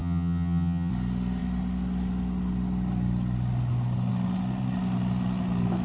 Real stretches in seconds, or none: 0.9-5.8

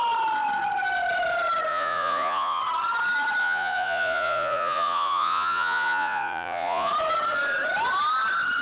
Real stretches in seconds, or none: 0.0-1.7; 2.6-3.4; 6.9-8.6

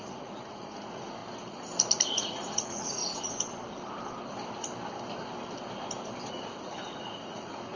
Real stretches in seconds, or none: 1.2-2.1; 3.0-6.3

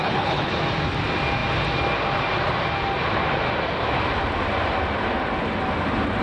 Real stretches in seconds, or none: 0.5-6.2

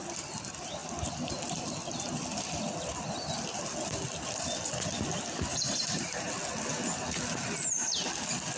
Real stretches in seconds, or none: 0.0-5.5; 6.3-8.6

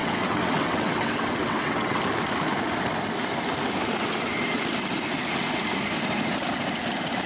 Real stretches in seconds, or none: 2.0-7.3

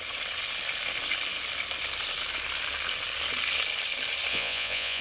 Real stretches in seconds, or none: 0.0-4.3

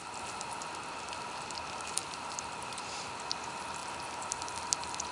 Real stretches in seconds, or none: 0.0-2.0; 3.1-3.8; 4.4-5.1